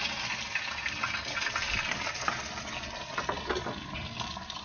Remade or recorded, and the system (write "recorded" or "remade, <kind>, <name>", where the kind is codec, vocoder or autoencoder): recorded